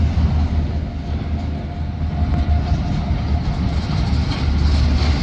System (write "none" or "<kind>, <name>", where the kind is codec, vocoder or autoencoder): none